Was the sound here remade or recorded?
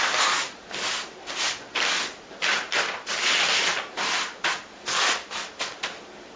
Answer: recorded